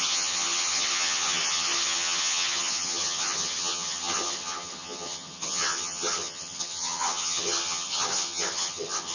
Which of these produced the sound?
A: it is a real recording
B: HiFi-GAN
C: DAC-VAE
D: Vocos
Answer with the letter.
B